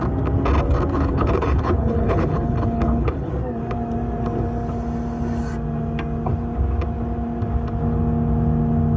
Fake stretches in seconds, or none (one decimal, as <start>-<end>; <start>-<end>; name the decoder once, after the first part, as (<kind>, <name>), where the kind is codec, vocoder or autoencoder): 0.9-3.3 (codec, HILCodec)